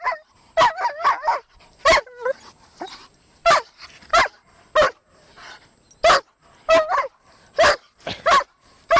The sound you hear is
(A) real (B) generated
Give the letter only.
A